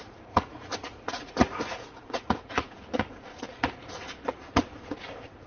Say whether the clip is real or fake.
fake